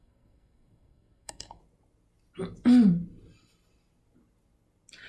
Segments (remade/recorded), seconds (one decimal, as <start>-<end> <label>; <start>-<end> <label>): 0.0-1.6 remade; 1.6-5.1 recorded